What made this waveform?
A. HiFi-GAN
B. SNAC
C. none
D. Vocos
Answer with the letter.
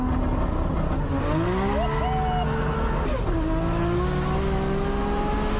C